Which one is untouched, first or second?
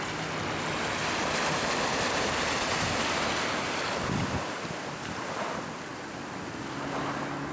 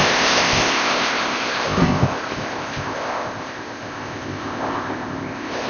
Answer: first